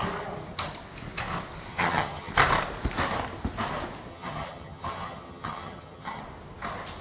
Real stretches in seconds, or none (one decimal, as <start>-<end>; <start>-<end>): 0.0-1.7; 2.3-4.1; 6.2-7.0